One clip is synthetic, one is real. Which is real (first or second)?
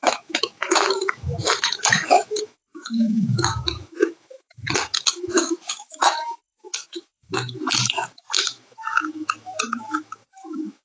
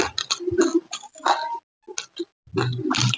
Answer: second